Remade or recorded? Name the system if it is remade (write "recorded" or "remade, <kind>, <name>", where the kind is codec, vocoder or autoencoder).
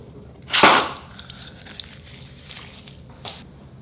recorded